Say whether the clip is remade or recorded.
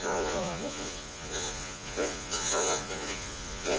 remade